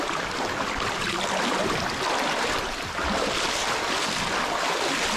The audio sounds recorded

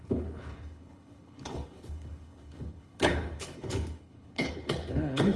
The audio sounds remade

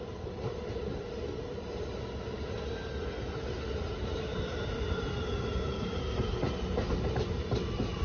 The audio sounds recorded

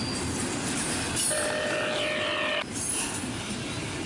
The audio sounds recorded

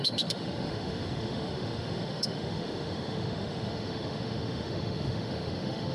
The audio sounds remade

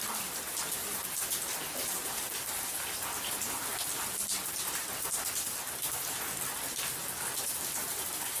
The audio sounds recorded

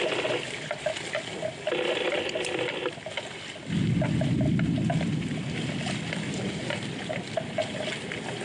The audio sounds recorded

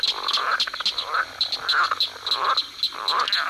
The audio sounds recorded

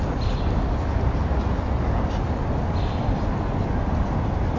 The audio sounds recorded